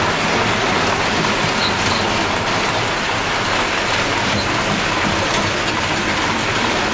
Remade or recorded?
recorded